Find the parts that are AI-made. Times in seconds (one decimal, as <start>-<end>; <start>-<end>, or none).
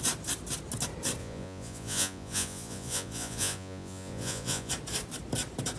1.2-4.7